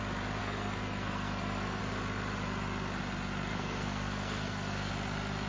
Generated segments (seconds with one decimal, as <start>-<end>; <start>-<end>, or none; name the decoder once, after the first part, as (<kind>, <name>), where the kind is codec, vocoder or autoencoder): 0.4-1.8 (codec, SNAC); 3.5-4.9